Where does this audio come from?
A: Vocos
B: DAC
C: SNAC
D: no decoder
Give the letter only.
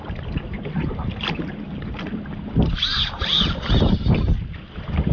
D